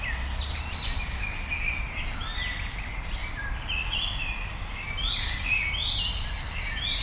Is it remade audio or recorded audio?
recorded